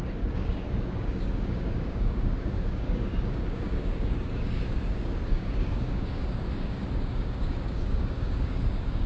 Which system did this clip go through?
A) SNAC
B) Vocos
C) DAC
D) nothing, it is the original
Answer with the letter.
C